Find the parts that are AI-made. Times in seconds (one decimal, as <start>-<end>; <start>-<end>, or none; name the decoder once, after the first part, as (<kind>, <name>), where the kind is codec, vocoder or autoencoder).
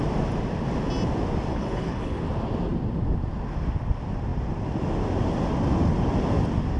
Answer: 1.5-2.2 (codec, HILCodec)